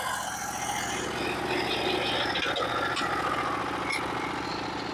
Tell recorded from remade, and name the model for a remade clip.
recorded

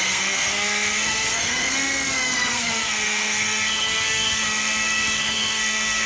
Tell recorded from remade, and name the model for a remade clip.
remade, codec, SNAC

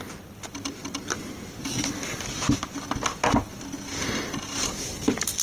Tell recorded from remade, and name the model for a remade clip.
recorded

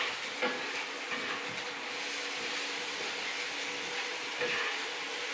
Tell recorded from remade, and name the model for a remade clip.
recorded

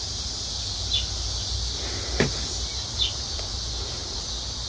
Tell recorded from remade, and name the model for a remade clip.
recorded